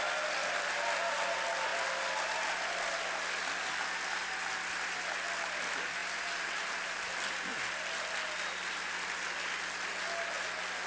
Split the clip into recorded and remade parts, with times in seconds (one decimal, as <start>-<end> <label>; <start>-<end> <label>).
0.0-6.0 recorded; 6.0-7.1 remade; 7.1-10.9 recorded